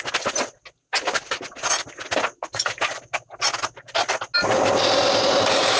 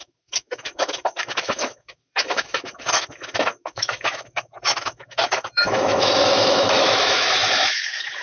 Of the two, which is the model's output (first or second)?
second